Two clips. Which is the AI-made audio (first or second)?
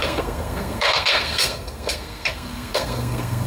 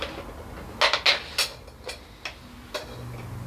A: first